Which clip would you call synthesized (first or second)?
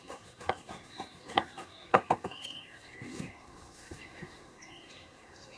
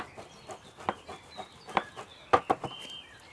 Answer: first